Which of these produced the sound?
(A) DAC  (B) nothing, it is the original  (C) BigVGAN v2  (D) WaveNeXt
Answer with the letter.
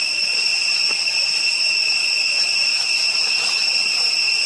B